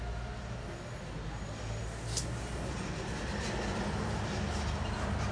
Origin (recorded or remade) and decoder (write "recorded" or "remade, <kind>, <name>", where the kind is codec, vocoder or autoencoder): recorded